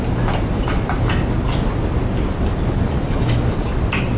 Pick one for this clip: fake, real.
real